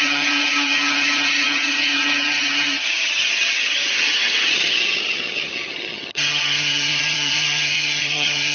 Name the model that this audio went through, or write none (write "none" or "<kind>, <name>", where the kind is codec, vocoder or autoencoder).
vocoder, HiFi-GAN